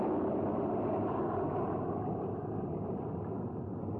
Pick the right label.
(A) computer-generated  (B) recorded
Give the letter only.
B